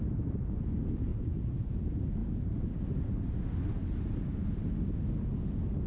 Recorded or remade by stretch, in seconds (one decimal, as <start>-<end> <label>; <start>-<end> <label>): 0.0-1.1 recorded; 1.1-1.8 remade; 1.8-2.2 recorded; 2.2-3.3 remade; 3.3-5.9 recorded